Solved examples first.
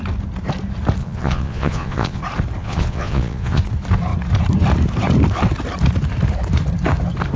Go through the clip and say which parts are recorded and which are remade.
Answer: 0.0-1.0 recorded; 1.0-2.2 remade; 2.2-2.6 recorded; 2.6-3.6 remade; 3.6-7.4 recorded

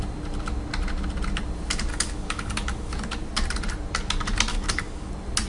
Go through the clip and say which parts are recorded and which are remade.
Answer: 0.0-1.9 recorded; 1.9-2.9 remade; 2.9-4.5 recorded; 4.5-5.1 remade; 5.1-5.5 recorded

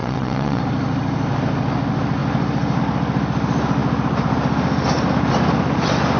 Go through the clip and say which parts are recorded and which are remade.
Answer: 0.0-0.6 remade; 0.6-6.2 recorded

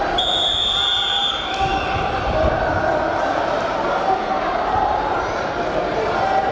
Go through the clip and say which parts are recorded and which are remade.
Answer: 0.0-6.5 remade